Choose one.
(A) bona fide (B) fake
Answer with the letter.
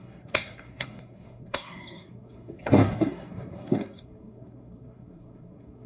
B